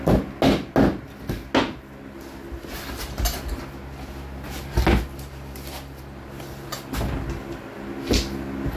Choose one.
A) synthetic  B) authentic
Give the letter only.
B